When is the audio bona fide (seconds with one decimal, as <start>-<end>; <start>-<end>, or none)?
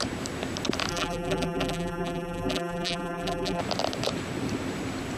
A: 0.0-0.9; 3.6-5.2